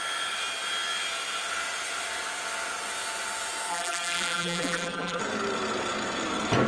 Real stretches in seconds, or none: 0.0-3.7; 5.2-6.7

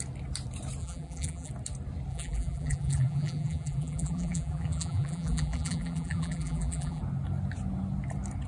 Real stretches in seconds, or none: 0.0-0.8; 1.5-2.1; 7.0-8.5

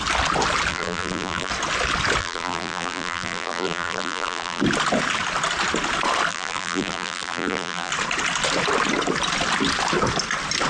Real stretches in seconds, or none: 0.0-0.7; 1.5-2.2; 4.6-6.3; 7.9-10.7

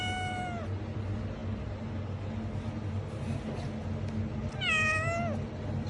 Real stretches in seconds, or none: 0.0-5.9

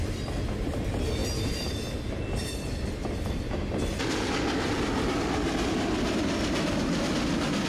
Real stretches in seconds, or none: 0.0-7.7

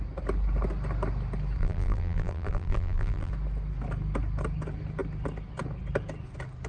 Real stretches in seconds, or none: 0.0-1.6; 3.3-6.7

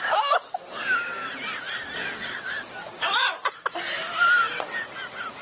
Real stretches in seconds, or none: 0.0-1.3; 4.5-5.4

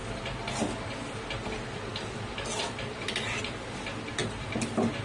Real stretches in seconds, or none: 0.0-4.2